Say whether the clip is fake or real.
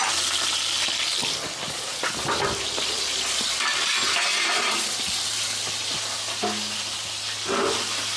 real